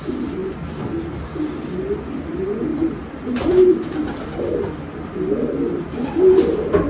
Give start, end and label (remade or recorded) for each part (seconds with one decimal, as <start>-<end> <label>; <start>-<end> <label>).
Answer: 0.0-0.4 remade; 0.4-2.1 recorded; 2.1-6.9 remade